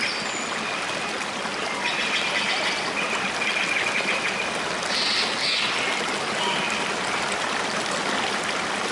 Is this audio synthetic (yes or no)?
no